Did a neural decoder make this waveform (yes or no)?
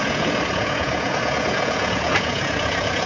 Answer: yes